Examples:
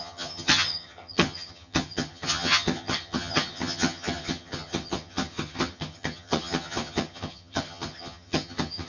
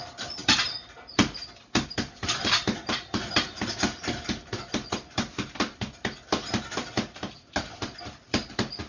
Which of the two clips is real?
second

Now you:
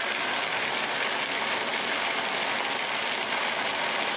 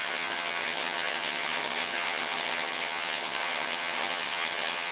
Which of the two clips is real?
first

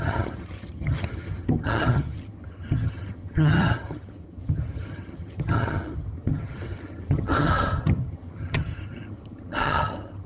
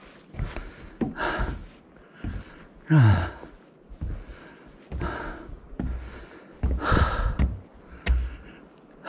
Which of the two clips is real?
second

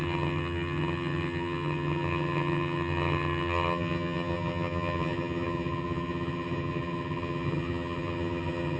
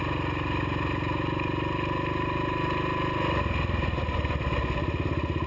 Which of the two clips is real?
second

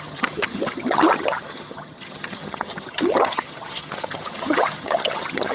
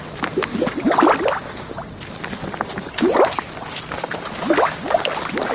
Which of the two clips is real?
second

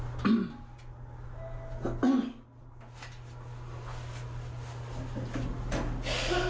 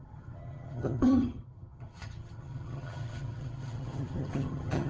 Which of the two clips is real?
first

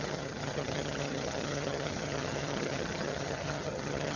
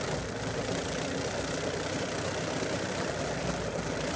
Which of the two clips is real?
second